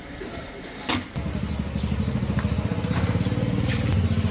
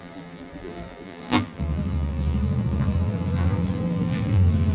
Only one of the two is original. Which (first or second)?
first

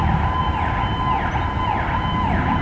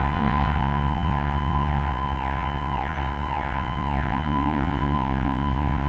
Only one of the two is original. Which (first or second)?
first